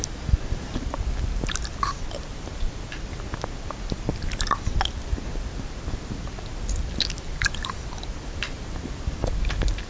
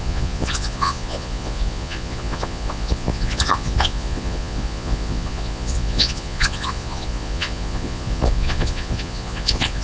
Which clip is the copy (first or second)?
second